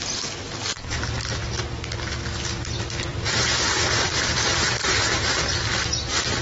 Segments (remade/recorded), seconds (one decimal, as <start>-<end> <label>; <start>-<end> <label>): 0.0-3.1 recorded; 3.1-5.6 remade; 5.6-6.4 recorded